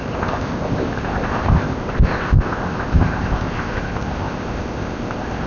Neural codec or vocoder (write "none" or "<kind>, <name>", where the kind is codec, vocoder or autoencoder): codec, ZipCodec